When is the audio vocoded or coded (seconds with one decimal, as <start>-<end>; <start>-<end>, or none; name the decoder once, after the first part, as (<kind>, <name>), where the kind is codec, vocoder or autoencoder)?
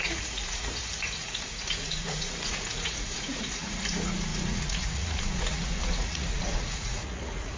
0.0-7.6 (vocoder, Vocos)